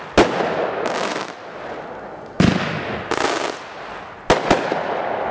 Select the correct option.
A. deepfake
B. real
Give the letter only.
B